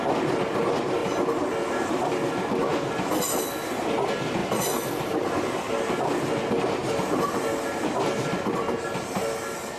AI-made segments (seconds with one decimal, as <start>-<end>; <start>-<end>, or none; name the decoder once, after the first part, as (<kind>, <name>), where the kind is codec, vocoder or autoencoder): none